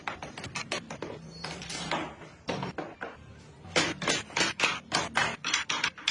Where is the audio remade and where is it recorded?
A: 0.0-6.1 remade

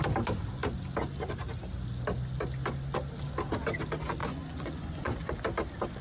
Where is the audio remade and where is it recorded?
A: 0.0-4.2 recorded; 4.2-5.3 remade; 5.3-6.0 recorded